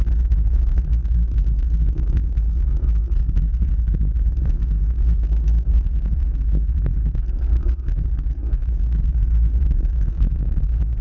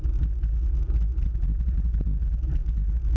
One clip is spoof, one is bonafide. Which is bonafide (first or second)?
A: second